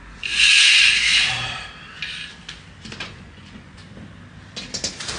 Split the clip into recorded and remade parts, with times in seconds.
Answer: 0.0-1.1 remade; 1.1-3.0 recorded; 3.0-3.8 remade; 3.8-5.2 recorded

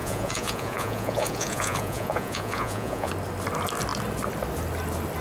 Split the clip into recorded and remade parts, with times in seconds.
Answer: 0.0-3.1 remade; 3.1-5.2 recorded

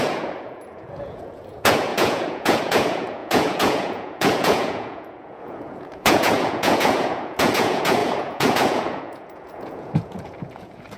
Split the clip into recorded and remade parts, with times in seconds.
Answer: 0.0-11.0 remade

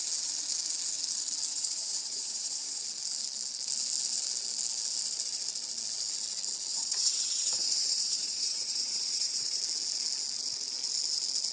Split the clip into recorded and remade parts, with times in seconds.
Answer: 0.0-1.5 recorded; 1.5-2.8 remade; 2.8-6.7 recorded; 6.7-9.6 remade; 9.6-11.5 recorded

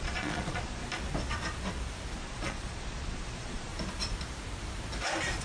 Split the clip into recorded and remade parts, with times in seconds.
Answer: 0.0-0.8 remade; 0.8-2.2 recorded; 2.2-3.7 remade; 3.7-5.4 recorded

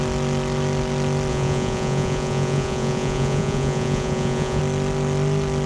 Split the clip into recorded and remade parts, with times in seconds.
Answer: 0.0-1.3 recorded; 1.3-4.6 remade; 4.6-5.7 recorded

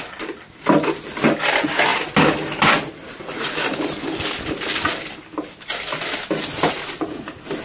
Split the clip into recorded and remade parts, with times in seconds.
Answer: 0.0-7.6 recorded

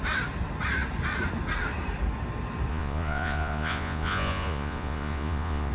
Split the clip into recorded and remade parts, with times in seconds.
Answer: 0.0-2.7 recorded; 2.7-5.7 remade